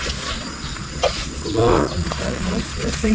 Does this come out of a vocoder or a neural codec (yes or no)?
yes